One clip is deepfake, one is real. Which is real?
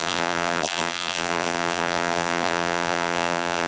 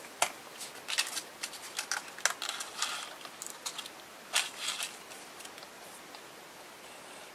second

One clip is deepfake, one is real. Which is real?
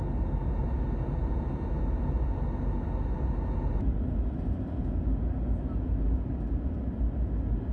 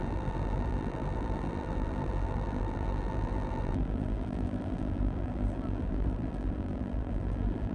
first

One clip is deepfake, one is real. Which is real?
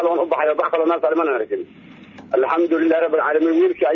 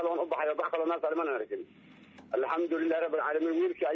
second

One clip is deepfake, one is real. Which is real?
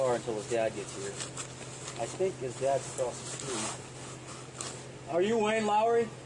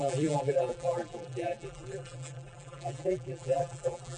first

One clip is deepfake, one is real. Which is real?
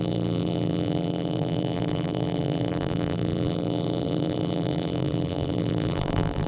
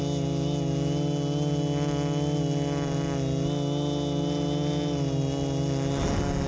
second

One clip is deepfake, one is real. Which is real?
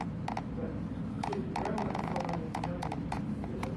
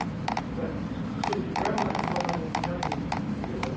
first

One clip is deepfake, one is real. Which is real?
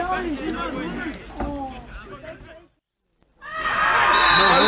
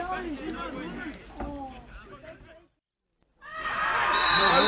first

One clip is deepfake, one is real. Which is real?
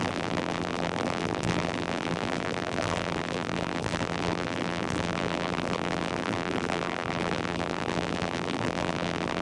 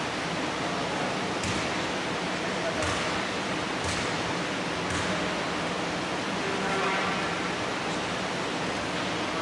second